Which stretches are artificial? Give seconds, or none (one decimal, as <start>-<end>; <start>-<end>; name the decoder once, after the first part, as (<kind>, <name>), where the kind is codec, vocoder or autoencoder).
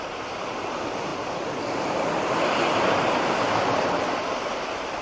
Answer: none